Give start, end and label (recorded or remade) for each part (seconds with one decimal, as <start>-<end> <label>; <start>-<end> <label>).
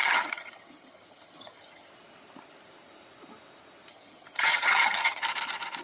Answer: 0.0-1.9 remade; 1.9-3.9 recorded; 3.9-5.2 remade; 5.2-5.8 recorded